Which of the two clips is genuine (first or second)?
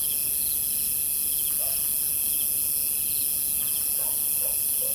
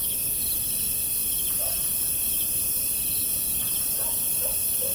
first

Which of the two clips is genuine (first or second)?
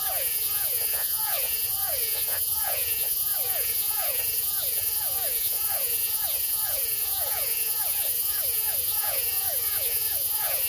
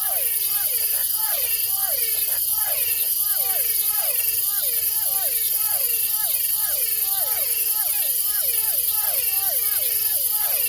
second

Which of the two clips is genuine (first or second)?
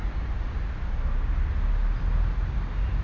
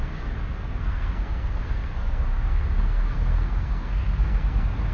first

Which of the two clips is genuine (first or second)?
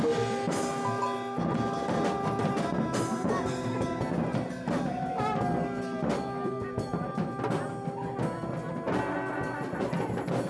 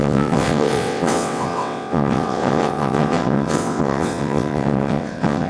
first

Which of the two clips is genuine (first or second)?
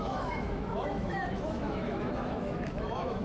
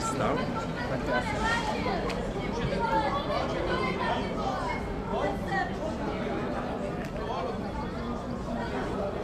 second